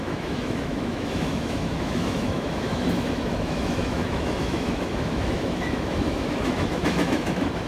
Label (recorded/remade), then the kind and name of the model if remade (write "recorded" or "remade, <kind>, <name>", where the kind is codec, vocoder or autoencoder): remade, autoencoder, DAC-VAE